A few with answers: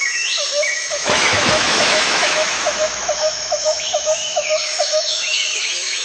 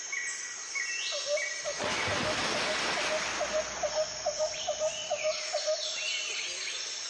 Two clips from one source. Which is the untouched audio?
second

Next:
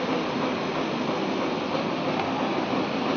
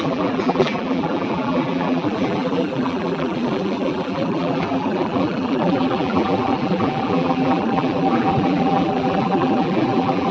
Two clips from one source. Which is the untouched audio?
first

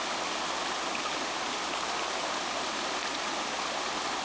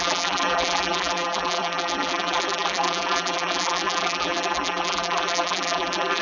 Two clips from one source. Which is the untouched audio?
first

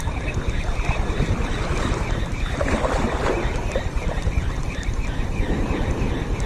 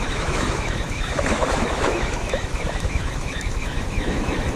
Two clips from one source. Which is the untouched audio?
first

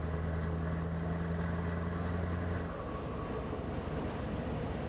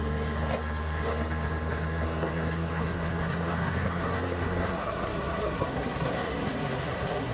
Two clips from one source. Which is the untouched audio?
first